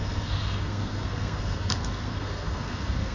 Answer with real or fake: fake